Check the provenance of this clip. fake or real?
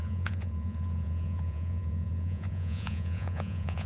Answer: fake